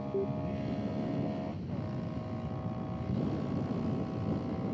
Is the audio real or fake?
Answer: real